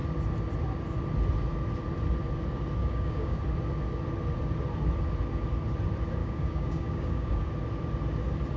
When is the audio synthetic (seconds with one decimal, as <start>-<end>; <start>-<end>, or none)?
2.8-3.4; 6.2-7.5